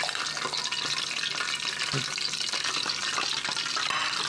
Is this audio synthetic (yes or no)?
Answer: no